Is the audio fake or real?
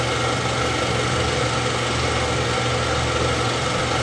real